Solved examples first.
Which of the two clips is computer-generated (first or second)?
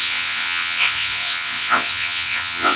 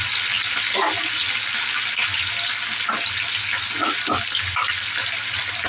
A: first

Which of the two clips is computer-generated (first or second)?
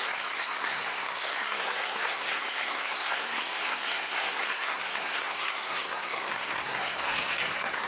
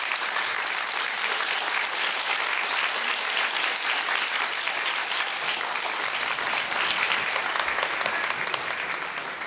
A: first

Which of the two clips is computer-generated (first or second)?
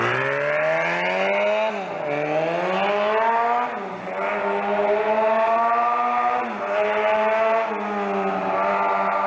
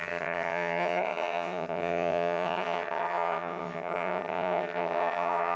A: second